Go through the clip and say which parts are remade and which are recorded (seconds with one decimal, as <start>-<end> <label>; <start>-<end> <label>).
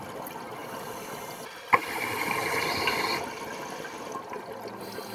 0.0-5.1 recorded